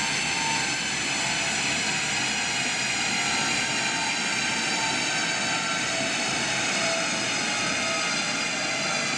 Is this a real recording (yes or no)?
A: yes